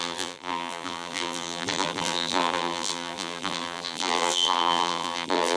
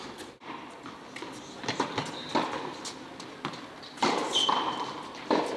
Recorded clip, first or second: second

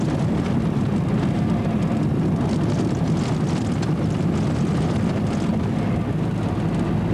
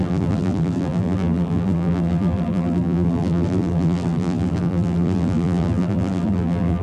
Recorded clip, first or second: first